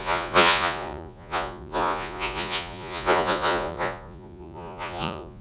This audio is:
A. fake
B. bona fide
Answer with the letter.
A